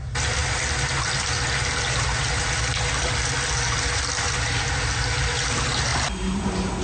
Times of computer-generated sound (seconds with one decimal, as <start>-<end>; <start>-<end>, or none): none